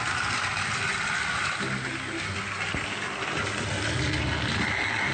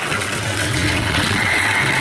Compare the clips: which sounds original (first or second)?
first